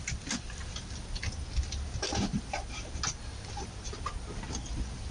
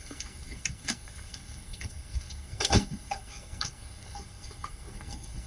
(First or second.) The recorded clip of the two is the first